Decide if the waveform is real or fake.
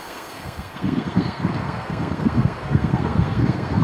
fake